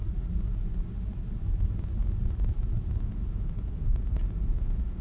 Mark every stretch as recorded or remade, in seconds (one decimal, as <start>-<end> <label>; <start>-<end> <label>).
0.0-3.0 recorded; 3.0-4.0 remade; 4.0-4.6 recorded; 4.6-5.0 remade